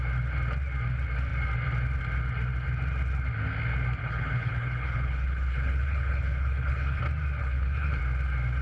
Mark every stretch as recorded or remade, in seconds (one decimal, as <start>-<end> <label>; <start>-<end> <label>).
0.0-4.0 recorded; 4.0-7.0 remade; 7.0-7.4 recorded; 7.4-8.0 remade; 8.0-8.6 recorded